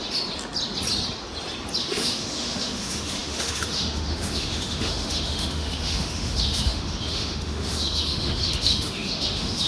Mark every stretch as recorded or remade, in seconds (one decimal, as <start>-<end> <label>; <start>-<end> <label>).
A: 0.0-1.8 recorded; 1.8-9.7 remade